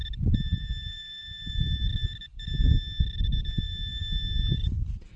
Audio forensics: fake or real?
fake